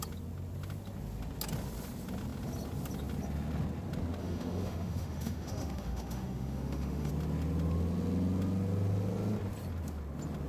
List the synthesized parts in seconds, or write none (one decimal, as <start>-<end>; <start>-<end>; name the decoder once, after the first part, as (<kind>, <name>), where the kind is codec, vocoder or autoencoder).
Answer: 4.2-7.1 (autoencoder, DAC-VAE)